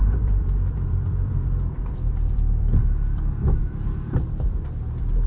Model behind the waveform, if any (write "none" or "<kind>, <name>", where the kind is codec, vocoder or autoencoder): vocoder, BigVGAN v2